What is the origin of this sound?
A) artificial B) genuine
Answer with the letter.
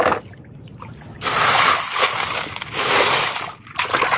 B